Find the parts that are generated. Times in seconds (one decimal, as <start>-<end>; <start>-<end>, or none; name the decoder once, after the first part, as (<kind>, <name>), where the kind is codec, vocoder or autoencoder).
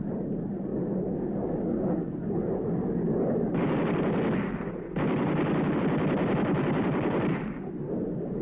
none